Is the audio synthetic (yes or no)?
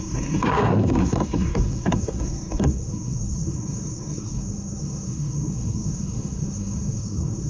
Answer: yes